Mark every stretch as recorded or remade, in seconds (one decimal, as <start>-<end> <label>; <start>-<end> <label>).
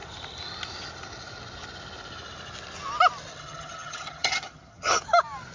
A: 0.0-3.3 recorded; 3.3-5.0 remade; 5.0-5.5 recorded